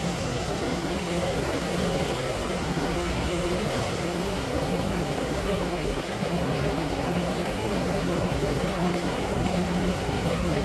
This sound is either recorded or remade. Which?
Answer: remade